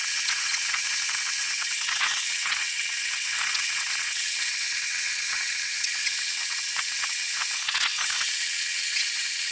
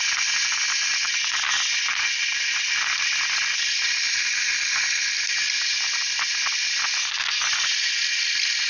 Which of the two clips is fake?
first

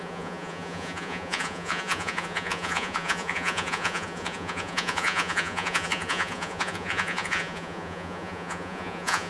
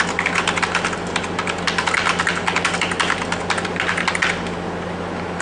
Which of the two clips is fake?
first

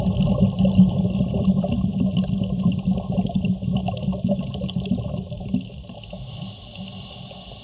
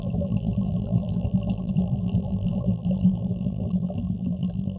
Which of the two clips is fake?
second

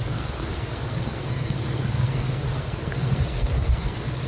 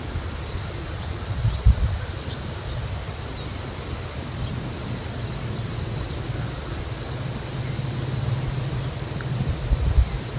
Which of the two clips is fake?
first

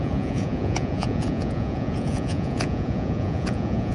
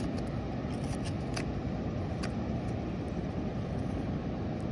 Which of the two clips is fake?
first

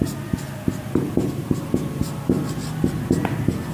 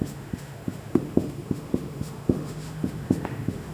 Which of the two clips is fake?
second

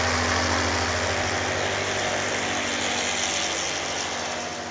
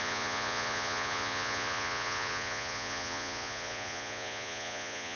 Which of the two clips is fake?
second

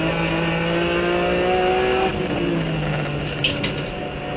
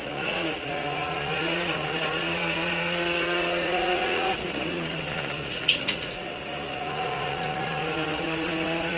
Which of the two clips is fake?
second